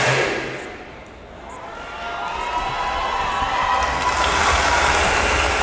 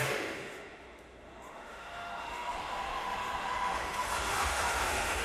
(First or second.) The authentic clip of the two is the first